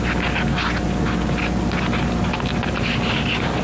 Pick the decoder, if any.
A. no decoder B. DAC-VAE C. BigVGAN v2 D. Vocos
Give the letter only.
A